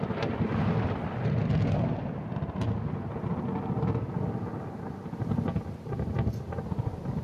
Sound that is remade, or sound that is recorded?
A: recorded